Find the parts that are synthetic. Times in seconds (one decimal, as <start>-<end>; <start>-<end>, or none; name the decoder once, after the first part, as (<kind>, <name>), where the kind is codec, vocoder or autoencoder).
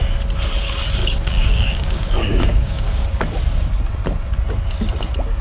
1.0-3.2 (codec, DAC)